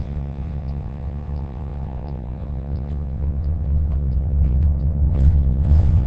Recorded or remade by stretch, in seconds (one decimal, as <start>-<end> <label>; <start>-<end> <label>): 0.0-6.1 remade

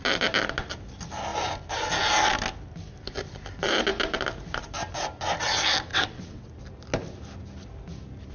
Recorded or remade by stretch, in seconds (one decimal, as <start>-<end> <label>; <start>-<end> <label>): 0.0-5.9 recorded; 5.9-6.5 remade; 6.5-8.3 recorded

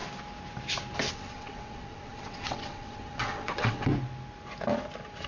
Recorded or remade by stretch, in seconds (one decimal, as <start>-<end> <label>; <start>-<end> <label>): 0.0-1.1 recorded; 1.1-3.9 remade; 3.9-5.3 recorded

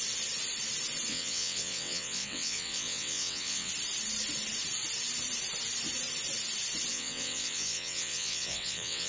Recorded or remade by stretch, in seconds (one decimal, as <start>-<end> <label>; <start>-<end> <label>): 0.0-1.1 recorded; 1.1-3.7 remade; 3.7-6.9 recorded; 6.9-9.1 remade

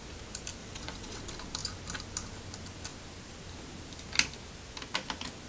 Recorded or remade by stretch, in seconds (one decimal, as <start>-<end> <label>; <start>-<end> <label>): 0.0-0.6 recorded; 0.6-1.2 remade; 1.2-5.5 recorded

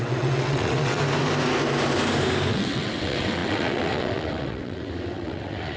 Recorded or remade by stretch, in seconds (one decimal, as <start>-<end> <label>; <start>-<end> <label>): 0.0-1.0 remade; 1.0-2.5 recorded; 2.5-5.8 remade

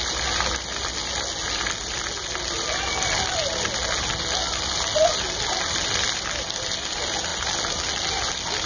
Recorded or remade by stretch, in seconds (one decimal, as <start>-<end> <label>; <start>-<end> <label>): 0.0-8.7 recorded

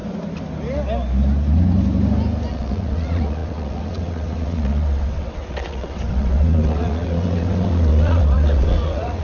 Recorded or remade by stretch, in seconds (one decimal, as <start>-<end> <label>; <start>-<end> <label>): 0.0-2.5 recorded; 2.5-9.2 remade